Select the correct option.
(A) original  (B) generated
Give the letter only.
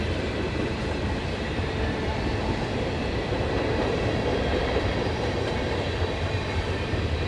B